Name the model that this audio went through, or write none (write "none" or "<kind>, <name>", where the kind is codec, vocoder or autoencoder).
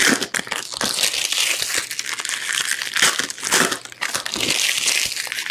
none